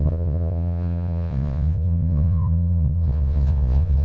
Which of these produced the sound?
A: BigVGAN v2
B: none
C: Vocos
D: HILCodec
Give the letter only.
C